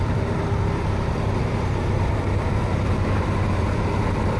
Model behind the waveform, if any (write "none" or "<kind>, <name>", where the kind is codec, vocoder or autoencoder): vocoder, BigVGAN v2